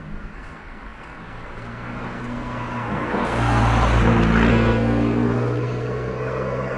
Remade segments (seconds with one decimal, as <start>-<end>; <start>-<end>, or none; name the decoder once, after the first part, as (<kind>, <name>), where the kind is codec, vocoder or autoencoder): 0.0-3.6 (codec, SNAC); 4.5-6.8